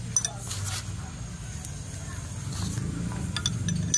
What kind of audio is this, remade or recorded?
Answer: recorded